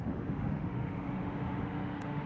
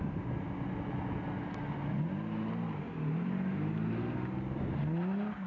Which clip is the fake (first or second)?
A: first